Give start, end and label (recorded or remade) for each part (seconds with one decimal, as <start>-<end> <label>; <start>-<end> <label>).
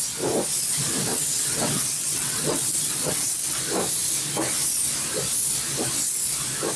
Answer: 0.0-1.1 recorded; 1.1-3.6 remade; 3.6-6.8 recorded